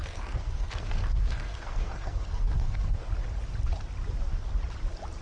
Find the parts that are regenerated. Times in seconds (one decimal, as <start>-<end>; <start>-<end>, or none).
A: 0.0-3.1